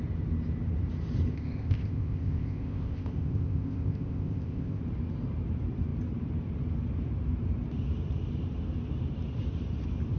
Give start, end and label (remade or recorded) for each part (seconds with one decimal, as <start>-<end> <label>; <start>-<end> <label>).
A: 0.0-1.3 recorded; 1.3-4.8 remade; 4.8-10.2 recorded